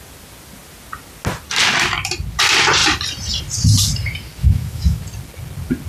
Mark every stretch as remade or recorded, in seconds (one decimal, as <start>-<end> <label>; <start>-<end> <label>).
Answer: 0.0-4.4 recorded; 4.4-5.0 remade; 5.0-5.9 recorded